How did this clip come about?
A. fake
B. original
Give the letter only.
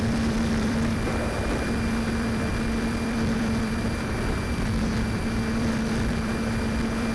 A